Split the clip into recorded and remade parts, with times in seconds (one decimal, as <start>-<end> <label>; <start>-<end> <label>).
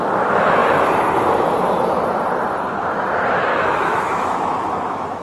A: 0.0-3.5 recorded; 3.5-5.2 remade